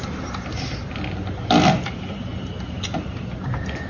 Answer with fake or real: real